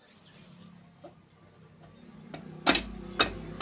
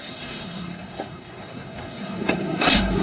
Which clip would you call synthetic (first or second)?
second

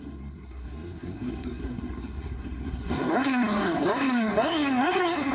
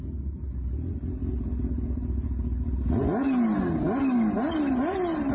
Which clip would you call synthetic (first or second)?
first